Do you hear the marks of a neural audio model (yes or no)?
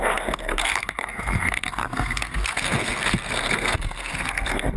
yes